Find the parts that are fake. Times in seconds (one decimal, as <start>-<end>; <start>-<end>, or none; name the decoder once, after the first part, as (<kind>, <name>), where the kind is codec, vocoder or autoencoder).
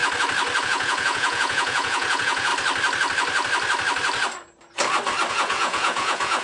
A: 0.6-2.5 (vocoder, Vocos); 5.3-6.4